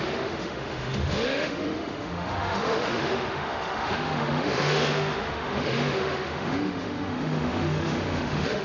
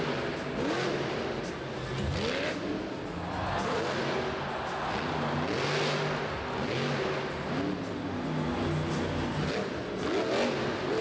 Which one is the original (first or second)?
second